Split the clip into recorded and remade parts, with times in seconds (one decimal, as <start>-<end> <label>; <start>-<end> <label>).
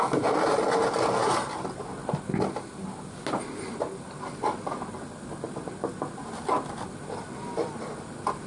0.0-8.5 recorded